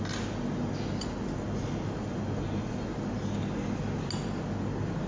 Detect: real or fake real